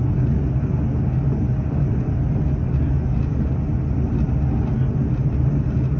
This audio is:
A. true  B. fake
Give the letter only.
A